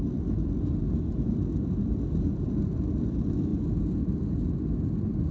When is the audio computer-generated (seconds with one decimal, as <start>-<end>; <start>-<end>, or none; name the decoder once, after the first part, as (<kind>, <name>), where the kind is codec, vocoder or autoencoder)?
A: none